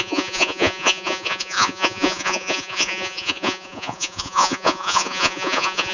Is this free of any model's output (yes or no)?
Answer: no